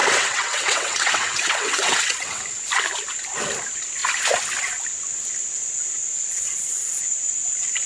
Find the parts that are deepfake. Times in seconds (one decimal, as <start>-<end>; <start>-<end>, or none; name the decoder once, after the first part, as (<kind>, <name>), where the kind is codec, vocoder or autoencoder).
0.0-2.4 (vocoder, WaveNeXt); 6.3-7.0